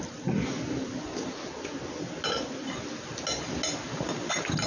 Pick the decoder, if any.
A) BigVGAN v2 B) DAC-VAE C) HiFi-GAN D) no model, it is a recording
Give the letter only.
D